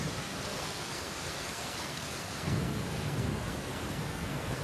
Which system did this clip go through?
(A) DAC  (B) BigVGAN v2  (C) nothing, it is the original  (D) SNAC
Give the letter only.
D